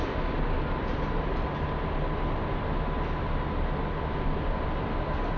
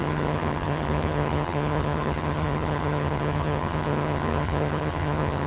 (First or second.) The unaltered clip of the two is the first